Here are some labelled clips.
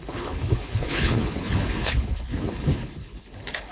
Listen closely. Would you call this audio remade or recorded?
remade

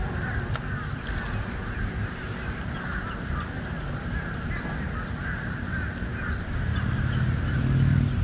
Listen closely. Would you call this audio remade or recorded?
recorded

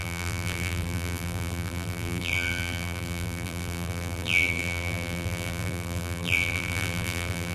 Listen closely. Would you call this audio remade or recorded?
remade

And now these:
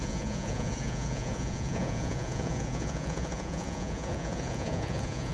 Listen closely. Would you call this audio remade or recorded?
remade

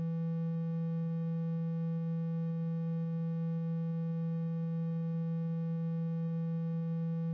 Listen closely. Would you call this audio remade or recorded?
recorded